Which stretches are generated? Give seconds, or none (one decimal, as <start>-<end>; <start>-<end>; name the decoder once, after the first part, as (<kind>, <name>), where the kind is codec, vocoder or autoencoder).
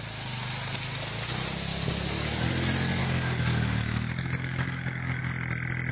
1.7-2.5 (codec, DAC); 3.0-5.2